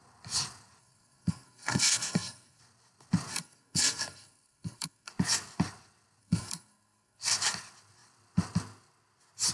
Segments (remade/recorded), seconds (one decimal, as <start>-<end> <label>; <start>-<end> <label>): 0.0-0.8 recorded; 0.8-2.6 remade; 2.6-3.3 recorded; 3.3-5.1 remade; 5.1-6.2 recorded; 6.2-7.2 remade; 7.2-9.5 recorded